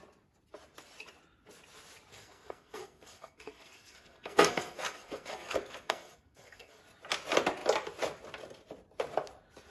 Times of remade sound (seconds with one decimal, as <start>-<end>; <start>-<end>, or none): 2.1-6.8